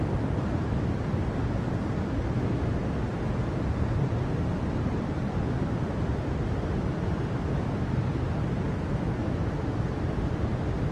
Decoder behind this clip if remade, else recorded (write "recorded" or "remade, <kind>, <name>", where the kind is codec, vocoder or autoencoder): recorded